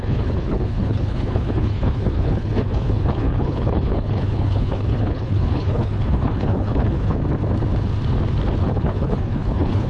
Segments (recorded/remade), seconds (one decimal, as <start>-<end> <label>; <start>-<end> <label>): 0.0-7.2 remade; 7.2-8.6 recorded; 8.6-9.9 remade